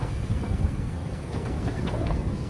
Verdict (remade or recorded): remade